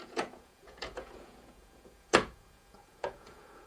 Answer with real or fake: fake